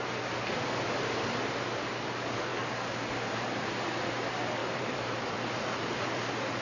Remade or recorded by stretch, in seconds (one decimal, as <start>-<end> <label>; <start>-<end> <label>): 0.0-4.6 recorded; 4.6-5.4 remade; 5.4-6.6 recorded